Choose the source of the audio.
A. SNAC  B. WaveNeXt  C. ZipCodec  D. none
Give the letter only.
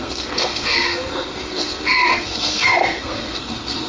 A